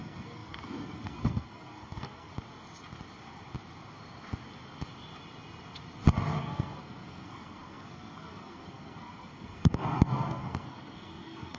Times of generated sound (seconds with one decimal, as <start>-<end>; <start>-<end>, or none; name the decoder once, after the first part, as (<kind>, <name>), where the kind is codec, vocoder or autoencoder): 0.0-2.3 (codec, SNAC); 6.4-11.6